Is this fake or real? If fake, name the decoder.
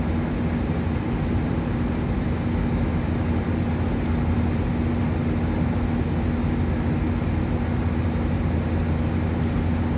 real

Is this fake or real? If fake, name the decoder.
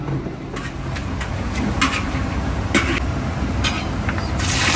real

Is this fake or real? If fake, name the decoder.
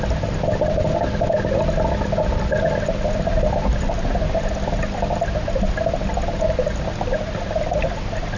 real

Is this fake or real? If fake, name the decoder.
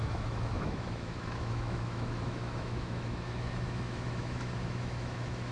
fake, autoencoder, DAC-VAE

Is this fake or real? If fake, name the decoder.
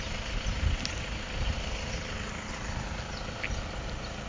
real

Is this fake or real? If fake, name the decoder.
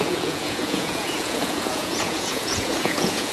fake, vocoder, Vocos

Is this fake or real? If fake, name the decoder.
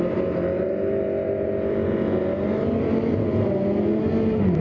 real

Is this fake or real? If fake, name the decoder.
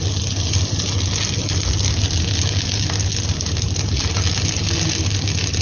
real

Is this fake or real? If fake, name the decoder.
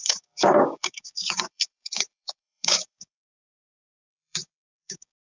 fake, codec, DAC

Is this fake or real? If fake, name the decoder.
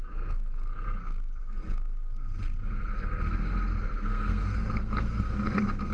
fake, codec, SNAC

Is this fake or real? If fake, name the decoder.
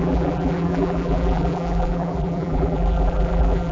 fake, vocoder, BigVGAN v2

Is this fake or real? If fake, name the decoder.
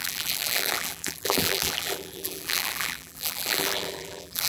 fake, vocoder, BigVGAN v2